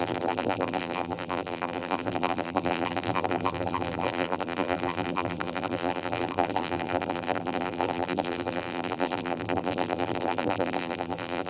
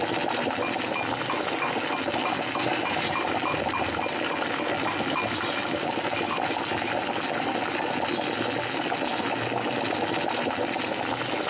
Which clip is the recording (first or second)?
second